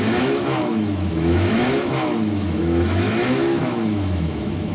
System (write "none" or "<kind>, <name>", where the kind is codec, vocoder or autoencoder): autoencoder, DAC-VAE